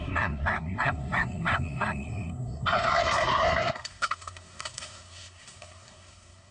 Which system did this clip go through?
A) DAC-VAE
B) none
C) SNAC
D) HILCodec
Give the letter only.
C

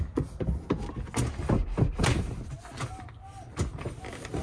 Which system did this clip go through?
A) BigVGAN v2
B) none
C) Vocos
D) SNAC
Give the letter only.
B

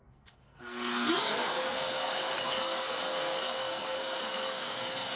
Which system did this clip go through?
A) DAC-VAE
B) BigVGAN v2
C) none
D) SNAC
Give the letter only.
D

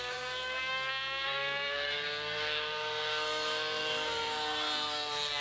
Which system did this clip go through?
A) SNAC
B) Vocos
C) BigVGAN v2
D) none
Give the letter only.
A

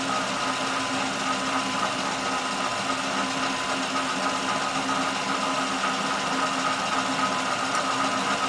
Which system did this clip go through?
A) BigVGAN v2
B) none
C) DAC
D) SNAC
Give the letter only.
B